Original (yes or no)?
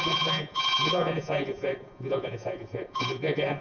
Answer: no